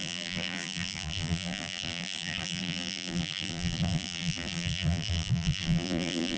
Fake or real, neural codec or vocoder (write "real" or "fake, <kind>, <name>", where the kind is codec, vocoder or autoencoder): fake, vocoder, BigVGAN v2